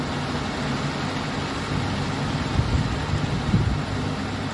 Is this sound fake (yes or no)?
no